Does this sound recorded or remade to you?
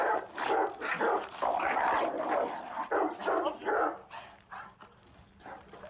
recorded